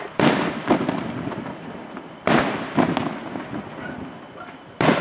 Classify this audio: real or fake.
real